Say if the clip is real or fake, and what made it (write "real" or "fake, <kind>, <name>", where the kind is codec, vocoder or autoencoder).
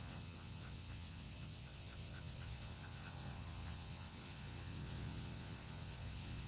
fake, vocoder, WaveNeXt